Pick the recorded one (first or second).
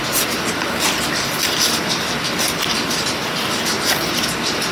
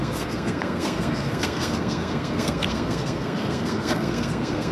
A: first